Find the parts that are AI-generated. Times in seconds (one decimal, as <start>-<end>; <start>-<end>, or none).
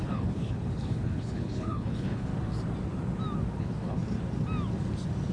0.0-2.3; 3.6-4.0